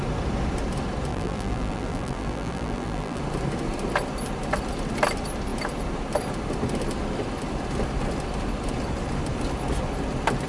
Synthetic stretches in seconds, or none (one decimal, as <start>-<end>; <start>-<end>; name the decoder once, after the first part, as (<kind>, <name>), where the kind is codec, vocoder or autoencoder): 1.1-3.2 (vocoder, BigVGAN v2)